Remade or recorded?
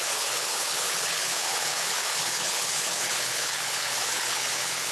remade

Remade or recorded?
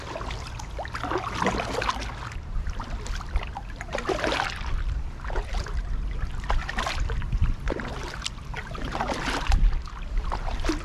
recorded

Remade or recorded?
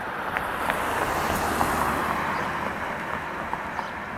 recorded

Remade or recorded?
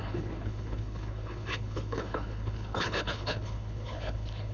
remade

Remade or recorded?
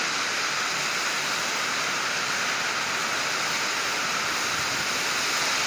recorded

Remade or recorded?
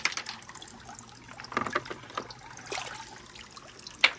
recorded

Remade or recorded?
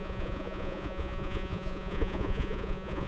remade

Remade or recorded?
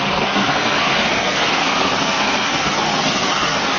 remade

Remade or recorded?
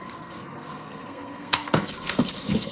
remade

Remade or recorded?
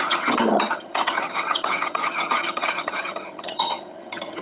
remade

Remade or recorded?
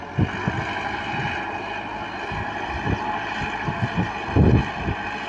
recorded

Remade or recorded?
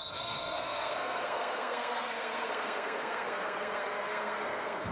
remade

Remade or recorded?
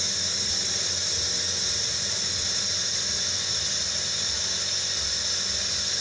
recorded